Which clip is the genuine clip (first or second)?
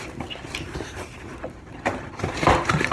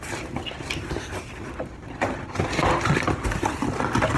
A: second